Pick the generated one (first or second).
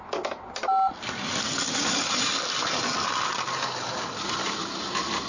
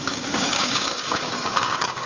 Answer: second